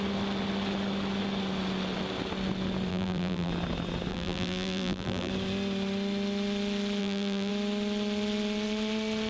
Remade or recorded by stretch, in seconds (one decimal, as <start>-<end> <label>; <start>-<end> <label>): 0.0-2.9 recorded; 2.9-3.5 remade; 3.5-4.1 recorded; 4.1-5.3 remade; 5.3-7.0 recorded; 7.0-7.5 remade; 7.5-9.3 recorded